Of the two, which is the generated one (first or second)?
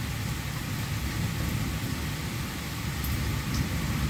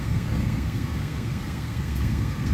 second